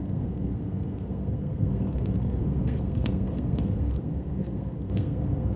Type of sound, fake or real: fake